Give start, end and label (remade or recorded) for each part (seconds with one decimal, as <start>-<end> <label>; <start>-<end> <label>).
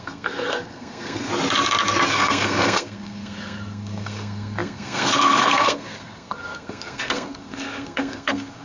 0.0-1.3 remade; 1.3-2.1 recorded; 2.1-8.6 remade